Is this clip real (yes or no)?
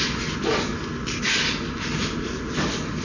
yes